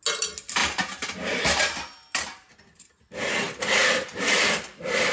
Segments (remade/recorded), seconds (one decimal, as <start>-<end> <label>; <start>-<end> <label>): 0.0-3.8 recorded; 3.8-5.1 remade